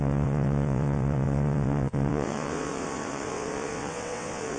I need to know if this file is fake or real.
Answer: fake